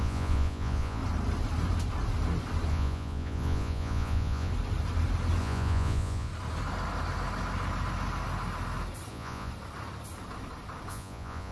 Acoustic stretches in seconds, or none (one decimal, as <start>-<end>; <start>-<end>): 1.0-2.7; 4.5-5.4; 6.3-9.1; 9.5-10.9